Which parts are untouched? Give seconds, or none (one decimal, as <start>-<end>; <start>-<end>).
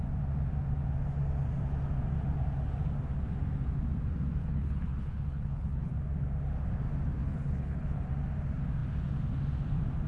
0.0-4.4; 5.9-7.2; 8.0-10.1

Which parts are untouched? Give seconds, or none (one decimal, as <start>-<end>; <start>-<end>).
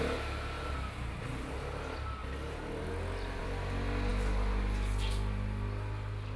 0.0-6.4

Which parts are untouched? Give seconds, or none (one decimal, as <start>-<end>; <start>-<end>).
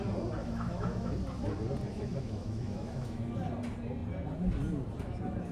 0.0-0.4; 1.1-1.9; 3.3-5.5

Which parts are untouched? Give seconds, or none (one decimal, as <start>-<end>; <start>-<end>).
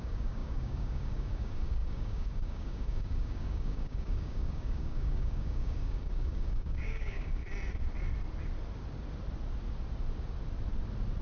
7.4-11.2